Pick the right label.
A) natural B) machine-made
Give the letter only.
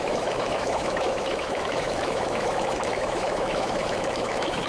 B